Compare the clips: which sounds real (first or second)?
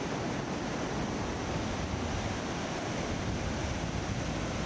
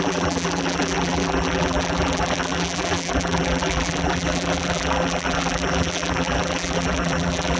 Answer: first